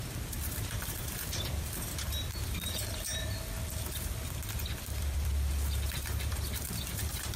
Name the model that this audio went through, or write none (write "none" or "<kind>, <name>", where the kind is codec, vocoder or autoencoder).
vocoder, BigVGAN v2